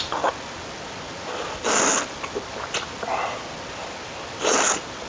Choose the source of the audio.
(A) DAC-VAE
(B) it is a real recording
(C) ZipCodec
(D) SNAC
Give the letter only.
B